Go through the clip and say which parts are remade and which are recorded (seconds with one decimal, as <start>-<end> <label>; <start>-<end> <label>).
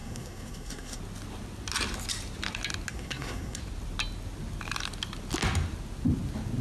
0.0-1.0 remade; 1.0-2.9 recorded; 2.9-3.6 remade; 3.6-6.6 recorded